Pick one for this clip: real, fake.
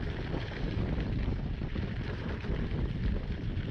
real